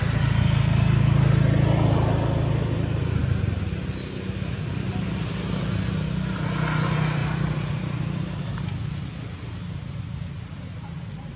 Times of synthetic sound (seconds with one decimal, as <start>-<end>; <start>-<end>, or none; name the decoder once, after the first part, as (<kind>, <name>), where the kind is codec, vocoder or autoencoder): none